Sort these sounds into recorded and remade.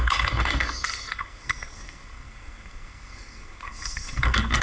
remade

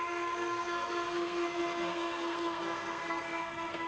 remade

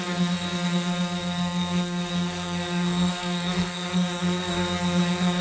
remade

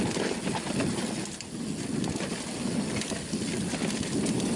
recorded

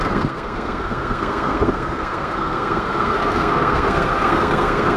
remade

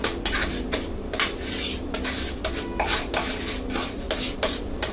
recorded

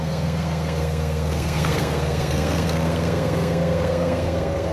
remade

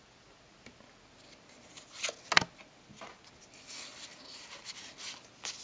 recorded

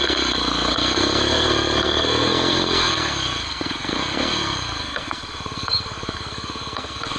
remade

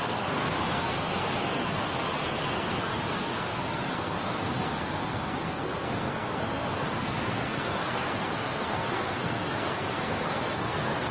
remade